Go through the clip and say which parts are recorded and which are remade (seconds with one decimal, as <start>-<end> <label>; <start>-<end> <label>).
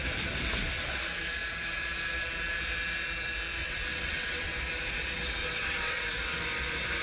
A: 0.0-3.6 recorded; 3.6-4.6 remade; 4.6-5.4 recorded; 5.4-6.0 remade; 6.0-7.0 recorded